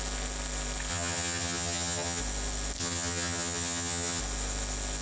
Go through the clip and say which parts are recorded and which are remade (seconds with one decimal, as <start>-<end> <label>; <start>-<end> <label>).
0.0-0.9 recorded; 0.9-2.2 remade; 2.2-2.8 recorded; 2.8-4.2 remade; 4.2-5.0 recorded